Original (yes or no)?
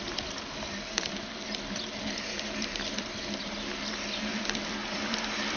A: no